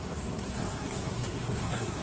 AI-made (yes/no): yes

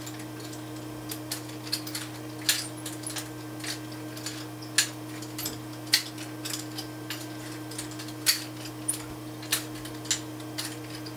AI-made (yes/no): no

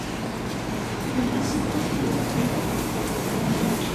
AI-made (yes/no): no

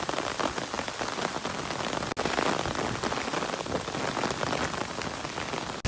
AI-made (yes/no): no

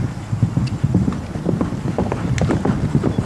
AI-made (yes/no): no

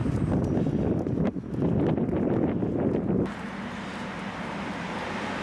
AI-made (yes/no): no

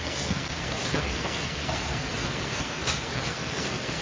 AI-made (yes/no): yes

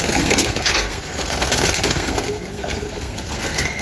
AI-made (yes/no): yes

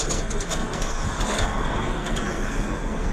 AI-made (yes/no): yes